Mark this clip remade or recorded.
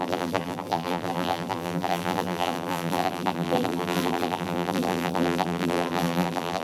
remade